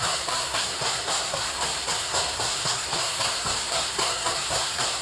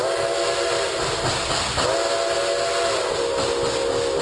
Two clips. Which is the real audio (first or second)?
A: second